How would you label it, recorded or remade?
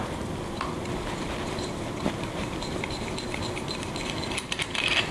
recorded